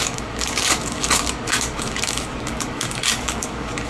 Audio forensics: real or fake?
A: fake